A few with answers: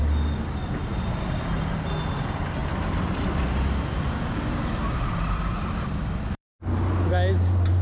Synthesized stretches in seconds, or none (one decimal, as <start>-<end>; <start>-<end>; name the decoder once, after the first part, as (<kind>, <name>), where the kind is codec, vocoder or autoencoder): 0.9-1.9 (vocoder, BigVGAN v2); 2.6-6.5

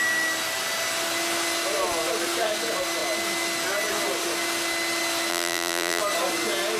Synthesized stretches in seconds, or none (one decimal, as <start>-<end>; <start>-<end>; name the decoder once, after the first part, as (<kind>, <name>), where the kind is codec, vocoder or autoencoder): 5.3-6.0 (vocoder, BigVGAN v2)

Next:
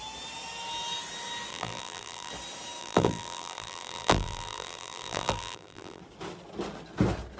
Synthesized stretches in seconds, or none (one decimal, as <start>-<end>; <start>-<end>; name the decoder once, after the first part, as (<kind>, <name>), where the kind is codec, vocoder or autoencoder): 1.5-2.3 (vocoder, BigVGAN v2); 2.8-6.0

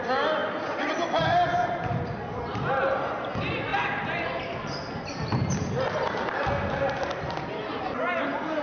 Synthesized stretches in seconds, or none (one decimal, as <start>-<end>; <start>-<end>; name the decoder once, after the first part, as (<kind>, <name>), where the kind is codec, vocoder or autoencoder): 0.4-2.6 (vocoder, BigVGAN v2); 3.7-4.4

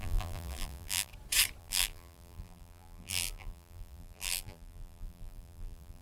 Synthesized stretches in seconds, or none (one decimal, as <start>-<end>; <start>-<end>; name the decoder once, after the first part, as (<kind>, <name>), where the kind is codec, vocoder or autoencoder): 0.0-1.1 (vocoder, BigVGAN v2); 1.6-6.0

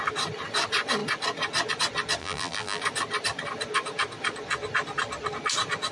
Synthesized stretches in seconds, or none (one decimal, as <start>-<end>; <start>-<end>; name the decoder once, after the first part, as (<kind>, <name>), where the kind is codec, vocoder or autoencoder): 2.2-2.8 (vocoder, BigVGAN v2)

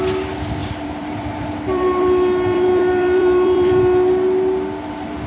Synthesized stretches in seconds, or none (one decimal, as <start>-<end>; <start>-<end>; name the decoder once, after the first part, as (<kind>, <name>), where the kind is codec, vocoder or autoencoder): 0.6-3.8 (vocoder, BigVGAN v2)